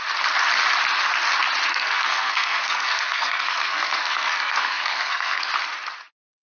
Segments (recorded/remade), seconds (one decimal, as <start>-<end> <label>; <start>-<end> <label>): 0.0-1.7 recorded; 1.7-5.5 remade; 5.5-6.4 recorded

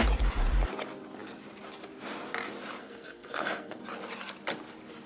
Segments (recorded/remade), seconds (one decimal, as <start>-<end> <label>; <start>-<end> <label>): 0.0-2.8 recorded; 2.8-3.8 remade; 3.8-5.1 recorded

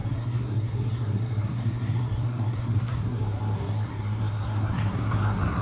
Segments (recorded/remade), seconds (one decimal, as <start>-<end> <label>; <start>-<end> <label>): 0.0-5.6 remade

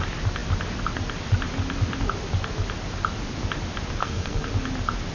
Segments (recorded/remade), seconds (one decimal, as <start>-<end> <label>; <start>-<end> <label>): 0.0-4.0 recorded; 4.0-4.5 remade; 4.5-5.1 recorded

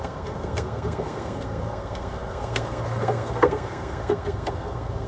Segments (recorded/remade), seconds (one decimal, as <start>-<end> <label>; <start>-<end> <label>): 0.0-5.1 remade

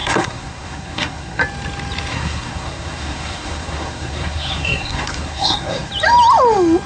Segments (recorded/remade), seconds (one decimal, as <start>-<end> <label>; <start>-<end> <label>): 0.0-1.4 remade; 1.4-2.1 recorded; 2.1-5.9 remade; 5.9-6.9 recorded